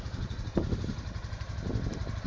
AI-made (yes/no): no